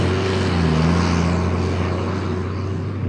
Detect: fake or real real